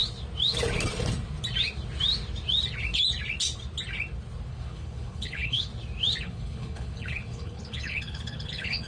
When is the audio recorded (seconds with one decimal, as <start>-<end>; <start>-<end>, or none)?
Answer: 0.0-4.5; 5.7-6.2